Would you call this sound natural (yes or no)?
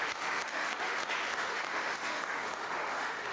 no